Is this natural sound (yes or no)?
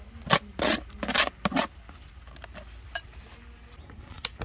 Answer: yes